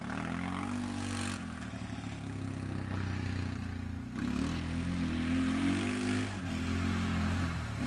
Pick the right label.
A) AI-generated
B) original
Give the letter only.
B